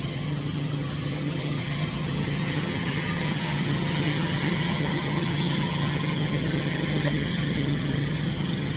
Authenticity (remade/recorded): remade